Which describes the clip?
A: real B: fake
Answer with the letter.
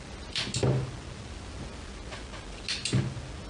A